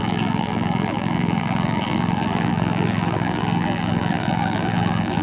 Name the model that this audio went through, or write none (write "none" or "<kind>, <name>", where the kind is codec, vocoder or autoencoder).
vocoder, BigVGAN v2